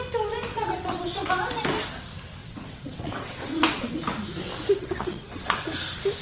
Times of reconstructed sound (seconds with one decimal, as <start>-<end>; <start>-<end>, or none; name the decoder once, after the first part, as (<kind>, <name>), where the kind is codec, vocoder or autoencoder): 0.5-1.3 (vocoder, WaveNeXt); 2.4-3.9; 4.8-5.7

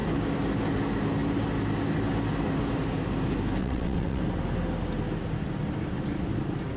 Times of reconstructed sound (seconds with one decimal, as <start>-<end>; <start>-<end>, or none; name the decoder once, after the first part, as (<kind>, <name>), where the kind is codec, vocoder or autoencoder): 3.6-4.2 (vocoder, WaveNeXt)

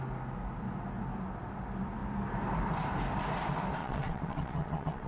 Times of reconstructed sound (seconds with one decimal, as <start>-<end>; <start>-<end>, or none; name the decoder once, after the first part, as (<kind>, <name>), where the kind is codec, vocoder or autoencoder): 3.8-5.1 (vocoder, WaveNeXt)

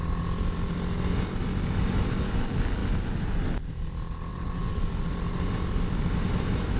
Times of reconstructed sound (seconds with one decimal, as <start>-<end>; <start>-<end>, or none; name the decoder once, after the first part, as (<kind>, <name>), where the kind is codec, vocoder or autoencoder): 4.3-4.8 (vocoder, WaveNeXt)

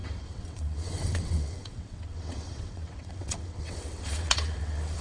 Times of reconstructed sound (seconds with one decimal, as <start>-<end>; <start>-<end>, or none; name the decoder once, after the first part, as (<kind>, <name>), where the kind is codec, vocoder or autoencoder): 0.0-5.0 (vocoder, WaveNeXt)